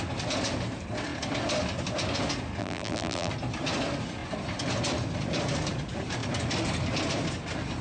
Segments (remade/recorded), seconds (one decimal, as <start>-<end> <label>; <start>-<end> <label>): 0.0-2.6 recorded; 2.6-3.3 remade; 3.3-7.8 recorded